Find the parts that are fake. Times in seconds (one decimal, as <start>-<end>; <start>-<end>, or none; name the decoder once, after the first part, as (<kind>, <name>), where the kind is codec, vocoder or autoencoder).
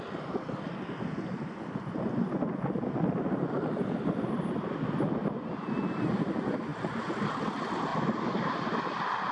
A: none